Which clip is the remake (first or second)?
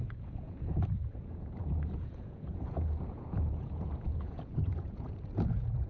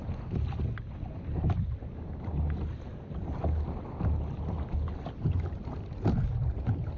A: first